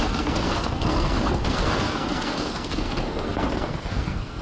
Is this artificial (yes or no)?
yes